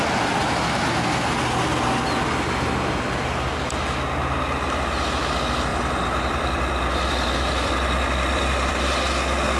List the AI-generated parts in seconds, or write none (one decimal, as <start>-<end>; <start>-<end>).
5.7-8.7